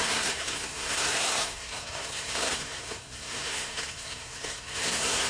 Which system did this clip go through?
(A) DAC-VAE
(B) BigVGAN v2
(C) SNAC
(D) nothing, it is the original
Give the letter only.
C